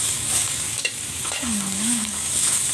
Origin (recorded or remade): remade